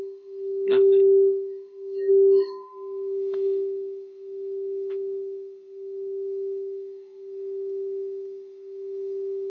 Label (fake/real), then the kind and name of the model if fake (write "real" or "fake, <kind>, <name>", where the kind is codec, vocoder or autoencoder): fake, codec, SNAC